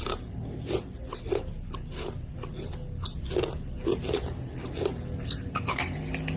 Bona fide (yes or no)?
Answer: yes